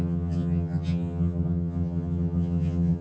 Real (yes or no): no